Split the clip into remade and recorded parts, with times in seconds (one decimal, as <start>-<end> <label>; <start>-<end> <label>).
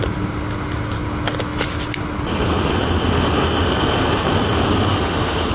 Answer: 0.0-4.9 recorded; 4.9-5.5 remade